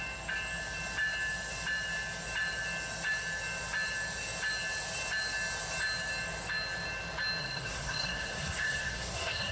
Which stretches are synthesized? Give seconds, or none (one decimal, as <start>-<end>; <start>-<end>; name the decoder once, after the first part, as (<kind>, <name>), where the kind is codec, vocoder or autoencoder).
7.4-9.5 (codec, SNAC)